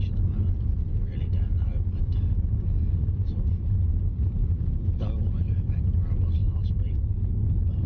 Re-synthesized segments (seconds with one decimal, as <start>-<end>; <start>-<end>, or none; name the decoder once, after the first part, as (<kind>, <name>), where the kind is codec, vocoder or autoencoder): 4.1-5.0 (vocoder, BigVGAN v2); 6.4-7.1

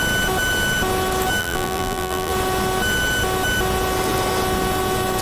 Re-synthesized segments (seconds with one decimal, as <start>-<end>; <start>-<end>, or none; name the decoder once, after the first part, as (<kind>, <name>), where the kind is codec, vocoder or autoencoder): 1.4-2.3 (vocoder, BigVGAN v2)

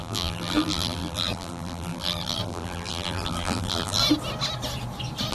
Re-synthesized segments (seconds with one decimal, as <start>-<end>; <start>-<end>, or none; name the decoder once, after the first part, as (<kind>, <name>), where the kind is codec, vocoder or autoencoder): 0.0-4.0 (vocoder, BigVGAN v2)